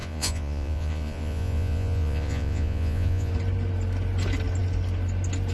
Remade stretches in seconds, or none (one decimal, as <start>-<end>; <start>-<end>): 0.0-3.3